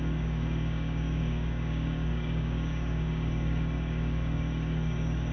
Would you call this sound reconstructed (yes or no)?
yes